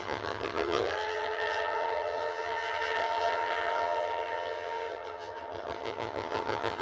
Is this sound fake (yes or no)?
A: yes